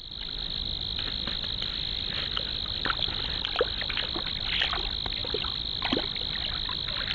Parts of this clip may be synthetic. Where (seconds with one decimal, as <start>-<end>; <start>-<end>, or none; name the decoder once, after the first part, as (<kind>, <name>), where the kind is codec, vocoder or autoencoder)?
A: 0.0-4.3 (vocoder, BigVGAN v2); 5.2-7.1